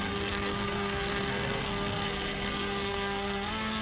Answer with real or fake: fake